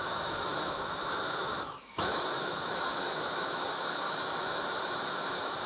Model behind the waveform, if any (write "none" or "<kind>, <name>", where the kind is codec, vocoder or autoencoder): autoencoder, DAC-VAE